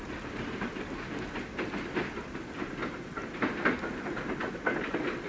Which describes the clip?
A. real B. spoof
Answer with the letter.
A